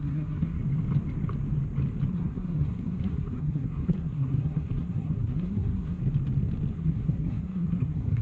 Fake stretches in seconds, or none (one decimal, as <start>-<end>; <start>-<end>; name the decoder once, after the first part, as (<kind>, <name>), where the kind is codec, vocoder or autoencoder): 0.0-0.6 (codec, SNAC); 2.1-6.0; 6.7-8.2